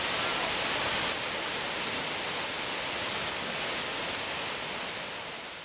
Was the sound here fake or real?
real